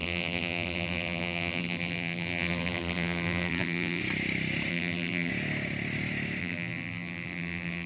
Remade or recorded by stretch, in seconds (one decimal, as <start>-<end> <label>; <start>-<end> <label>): 0.0-4.0 remade; 4.0-4.7 recorded; 4.7-5.3 remade; 5.3-6.4 recorded; 6.4-7.9 remade